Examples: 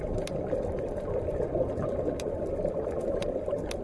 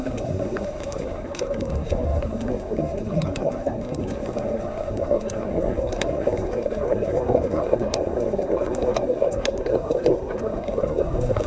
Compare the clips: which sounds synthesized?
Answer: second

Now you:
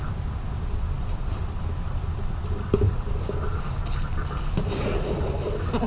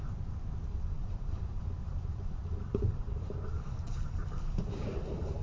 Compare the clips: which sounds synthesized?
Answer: second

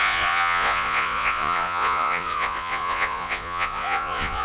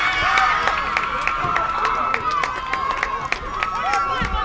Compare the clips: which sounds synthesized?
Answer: first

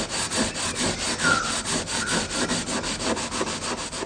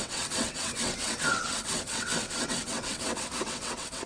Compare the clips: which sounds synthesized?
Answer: second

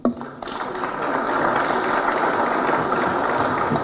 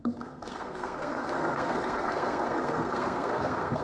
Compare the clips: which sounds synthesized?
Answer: second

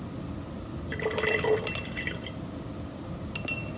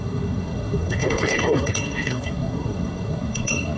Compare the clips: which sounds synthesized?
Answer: second